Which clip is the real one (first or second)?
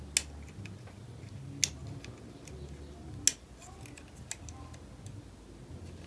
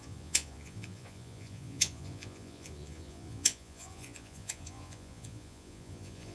first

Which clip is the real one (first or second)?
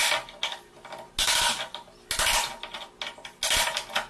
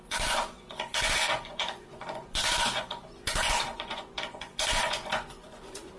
first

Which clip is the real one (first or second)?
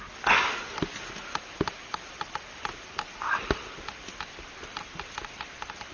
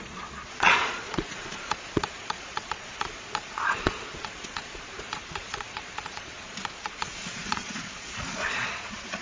first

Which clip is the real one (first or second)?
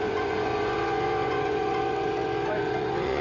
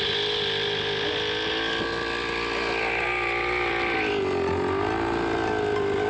second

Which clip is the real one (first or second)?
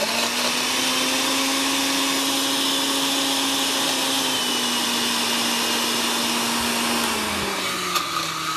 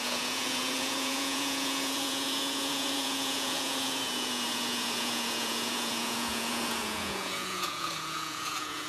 first